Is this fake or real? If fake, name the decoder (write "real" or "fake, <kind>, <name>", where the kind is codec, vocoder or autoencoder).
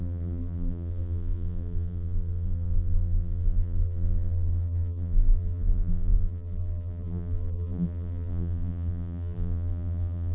fake, vocoder, BigVGAN v2